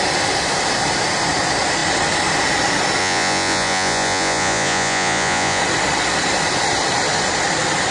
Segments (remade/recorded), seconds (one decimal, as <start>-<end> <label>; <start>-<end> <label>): 0.0-3.0 recorded; 3.0-5.6 remade; 5.6-7.9 recorded